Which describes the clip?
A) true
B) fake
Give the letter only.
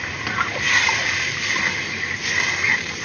A